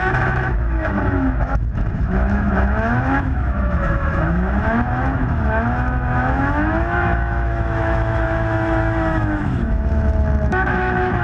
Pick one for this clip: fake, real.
fake